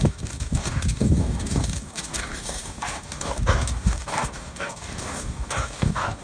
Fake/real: fake